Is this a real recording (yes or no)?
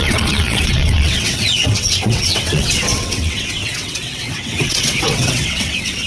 no